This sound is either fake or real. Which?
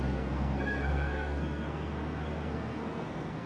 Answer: fake